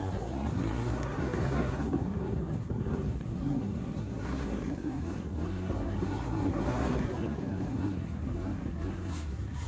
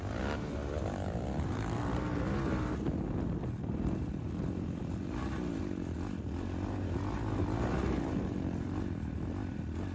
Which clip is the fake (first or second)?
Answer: first